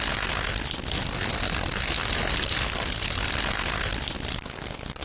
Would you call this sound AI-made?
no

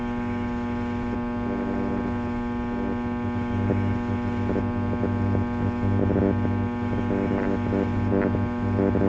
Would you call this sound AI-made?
no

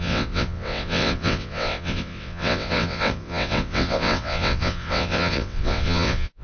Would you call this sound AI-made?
yes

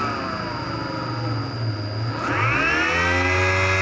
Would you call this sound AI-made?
no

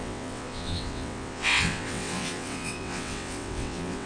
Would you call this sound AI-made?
yes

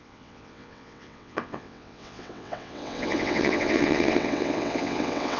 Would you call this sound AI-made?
yes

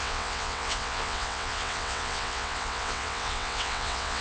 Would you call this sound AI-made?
yes